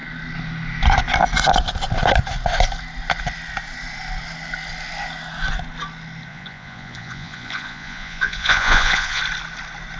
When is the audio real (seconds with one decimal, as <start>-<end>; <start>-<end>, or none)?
0.0-6.3; 9.2-10.0